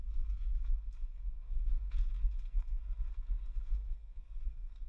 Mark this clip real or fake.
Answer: fake